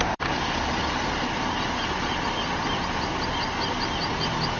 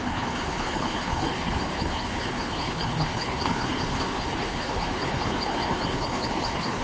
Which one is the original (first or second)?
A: first